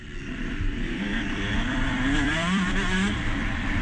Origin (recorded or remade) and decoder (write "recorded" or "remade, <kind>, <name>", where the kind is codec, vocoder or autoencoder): remade, vocoder, BigVGAN v2